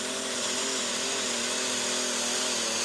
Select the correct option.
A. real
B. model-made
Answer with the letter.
A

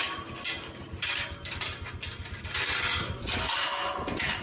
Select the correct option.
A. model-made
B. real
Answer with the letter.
B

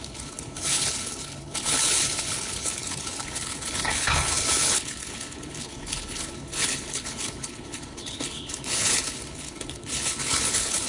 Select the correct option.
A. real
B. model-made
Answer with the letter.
B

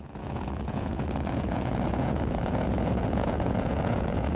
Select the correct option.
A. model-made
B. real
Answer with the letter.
A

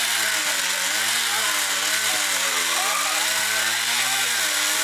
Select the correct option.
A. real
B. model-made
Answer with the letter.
A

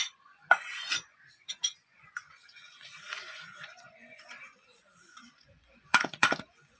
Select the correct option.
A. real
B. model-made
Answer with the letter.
B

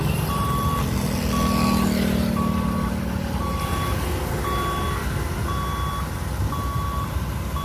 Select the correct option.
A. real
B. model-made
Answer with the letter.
A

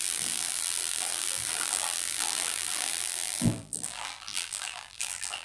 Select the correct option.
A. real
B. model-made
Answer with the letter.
B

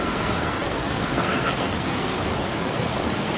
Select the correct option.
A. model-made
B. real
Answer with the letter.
A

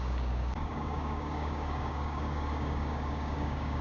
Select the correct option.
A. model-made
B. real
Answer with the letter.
A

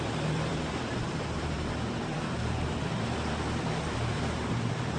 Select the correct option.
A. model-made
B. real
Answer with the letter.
A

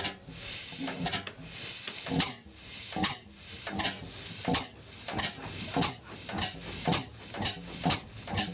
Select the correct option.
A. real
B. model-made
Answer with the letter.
A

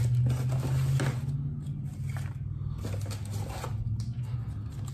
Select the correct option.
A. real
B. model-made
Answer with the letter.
A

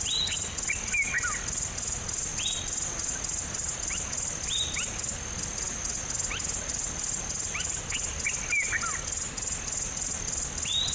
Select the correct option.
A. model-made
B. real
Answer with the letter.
B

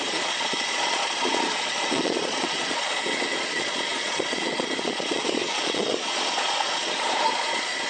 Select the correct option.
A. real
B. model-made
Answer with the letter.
B